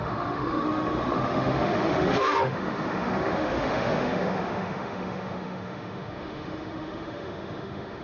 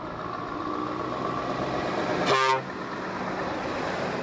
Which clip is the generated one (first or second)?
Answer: first